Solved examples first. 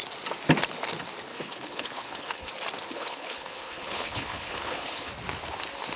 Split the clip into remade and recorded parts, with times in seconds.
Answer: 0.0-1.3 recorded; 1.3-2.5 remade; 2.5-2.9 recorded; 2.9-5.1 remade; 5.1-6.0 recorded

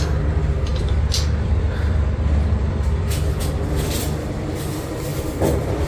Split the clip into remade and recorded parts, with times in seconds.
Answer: 0.0-0.7 recorded; 0.7-4.2 remade; 4.2-5.1 recorded; 5.1-5.9 remade

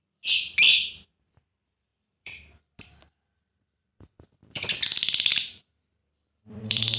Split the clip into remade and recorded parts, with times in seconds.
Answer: 0.0-7.0 remade

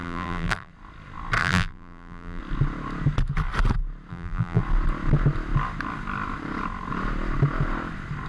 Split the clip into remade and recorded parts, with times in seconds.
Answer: 0.0-0.7 remade; 0.7-1.4 recorded; 1.4-2.4 remade; 2.4-4.1 recorded; 4.1-4.6 remade; 4.6-8.3 recorded

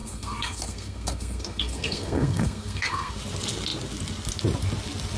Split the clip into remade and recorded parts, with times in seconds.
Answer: 0.0-3.1 remade; 3.1-5.2 recorded